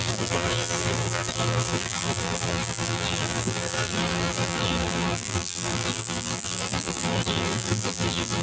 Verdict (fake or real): fake